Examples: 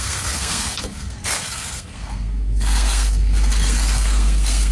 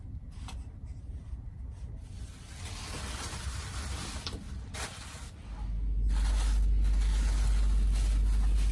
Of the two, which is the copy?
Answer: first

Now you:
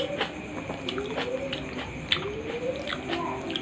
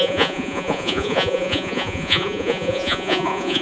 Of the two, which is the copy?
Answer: second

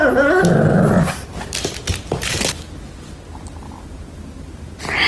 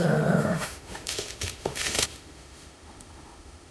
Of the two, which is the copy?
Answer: second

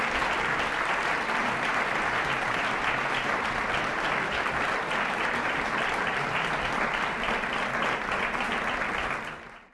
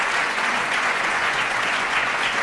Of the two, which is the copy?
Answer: second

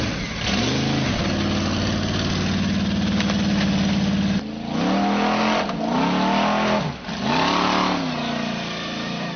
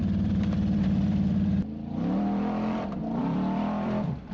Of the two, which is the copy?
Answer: second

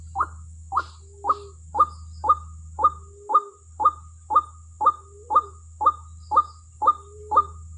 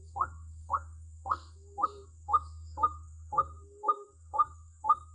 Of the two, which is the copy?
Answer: second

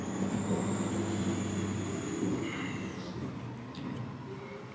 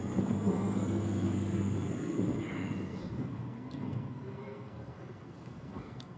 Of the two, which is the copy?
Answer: second